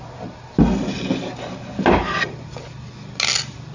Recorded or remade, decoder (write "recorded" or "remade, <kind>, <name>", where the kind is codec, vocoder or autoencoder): recorded